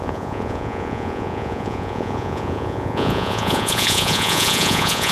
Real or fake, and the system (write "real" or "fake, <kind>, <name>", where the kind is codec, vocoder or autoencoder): fake, vocoder, Vocos